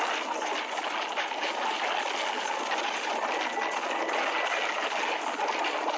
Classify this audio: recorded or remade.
recorded